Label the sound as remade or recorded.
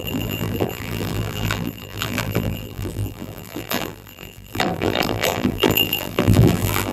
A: remade